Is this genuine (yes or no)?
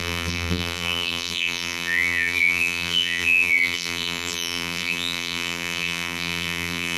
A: no